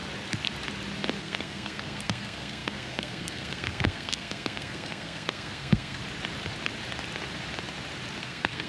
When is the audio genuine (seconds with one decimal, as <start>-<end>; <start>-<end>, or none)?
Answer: 0.0-1.2; 6.0-8.2